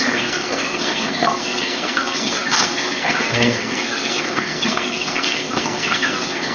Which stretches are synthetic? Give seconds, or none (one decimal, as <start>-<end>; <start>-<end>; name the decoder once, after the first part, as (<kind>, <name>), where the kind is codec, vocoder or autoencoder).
0.0-6.5 (codec, SNAC)